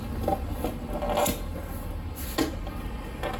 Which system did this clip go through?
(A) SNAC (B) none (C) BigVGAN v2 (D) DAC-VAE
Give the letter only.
B